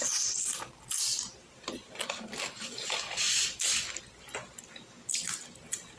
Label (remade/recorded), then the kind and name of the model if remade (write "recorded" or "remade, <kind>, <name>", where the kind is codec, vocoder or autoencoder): recorded